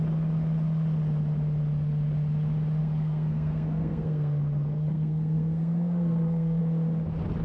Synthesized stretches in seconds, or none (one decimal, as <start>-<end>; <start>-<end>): 2.8-6.6